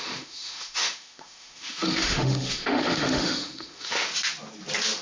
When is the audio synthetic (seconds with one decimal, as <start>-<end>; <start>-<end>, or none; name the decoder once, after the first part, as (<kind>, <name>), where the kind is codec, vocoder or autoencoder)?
0.0-4.1 (autoencoder, DAC-VAE)